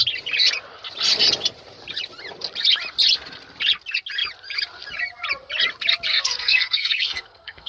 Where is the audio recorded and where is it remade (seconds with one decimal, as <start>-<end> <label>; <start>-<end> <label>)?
0.0-6.1 recorded; 6.1-7.7 remade